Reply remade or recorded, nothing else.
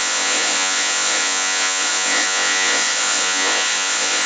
remade